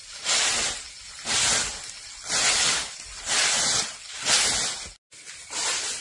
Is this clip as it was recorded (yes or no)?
yes